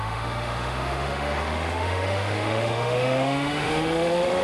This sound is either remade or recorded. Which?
remade